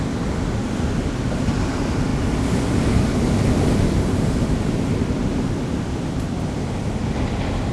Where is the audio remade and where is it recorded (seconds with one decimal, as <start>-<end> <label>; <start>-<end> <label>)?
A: 0.0-7.7 recorded